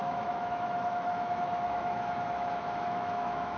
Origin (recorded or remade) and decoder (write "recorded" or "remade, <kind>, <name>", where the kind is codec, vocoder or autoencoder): remade, autoencoder, DAC-VAE